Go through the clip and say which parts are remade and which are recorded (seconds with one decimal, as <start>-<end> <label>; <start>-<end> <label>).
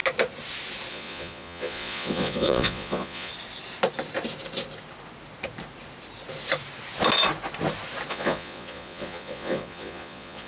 0.0-0.9 recorded; 0.9-3.3 remade; 3.3-8.1 recorded; 8.1-10.5 remade